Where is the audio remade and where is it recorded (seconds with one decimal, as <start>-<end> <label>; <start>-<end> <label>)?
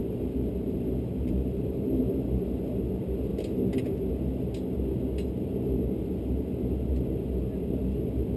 0.0-2.0 remade; 2.0-8.4 recorded